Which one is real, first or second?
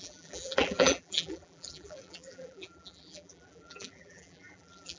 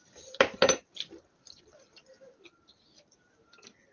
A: second